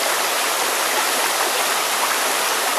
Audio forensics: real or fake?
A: real